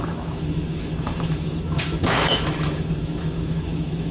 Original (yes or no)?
no